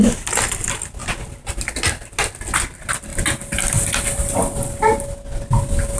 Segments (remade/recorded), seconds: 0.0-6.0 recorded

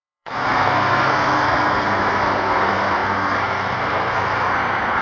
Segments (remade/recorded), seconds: 0.0-5.0 remade

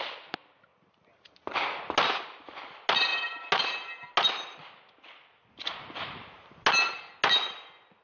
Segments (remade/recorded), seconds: 0.0-0.7 recorded; 0.7-1.8 remade; 1.8-8.0 recorded

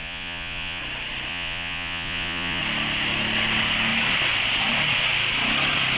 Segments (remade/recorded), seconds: 0.0-0.8 remade; 0.8-1.3 recorded; 1.3-2.6 remade; 2.6-6.0 recorded